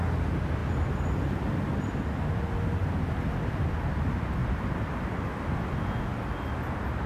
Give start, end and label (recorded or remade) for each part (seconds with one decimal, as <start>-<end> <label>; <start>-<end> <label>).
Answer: 0.0-4.4 recorded; 4.4-5.2 remade; 5.2-7.1 recorded